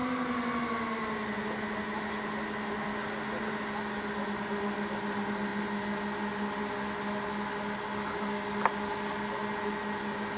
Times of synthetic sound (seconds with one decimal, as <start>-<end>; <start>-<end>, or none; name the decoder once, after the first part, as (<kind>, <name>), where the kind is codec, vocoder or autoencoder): none